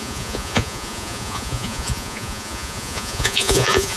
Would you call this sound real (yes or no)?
no